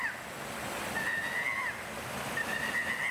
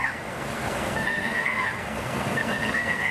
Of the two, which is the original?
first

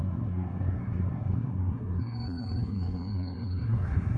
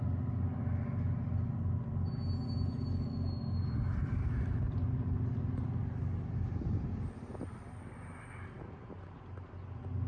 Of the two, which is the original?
second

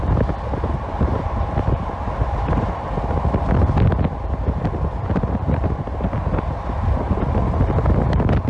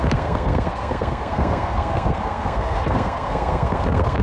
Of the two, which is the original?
first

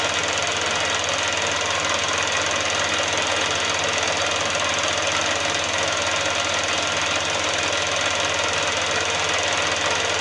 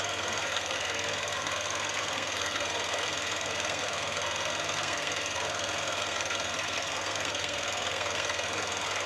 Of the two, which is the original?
first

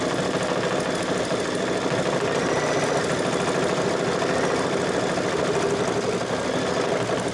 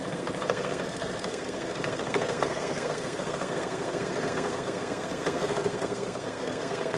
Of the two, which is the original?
first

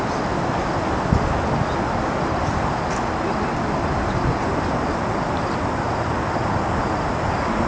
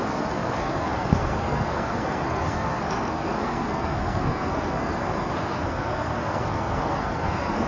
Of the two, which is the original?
first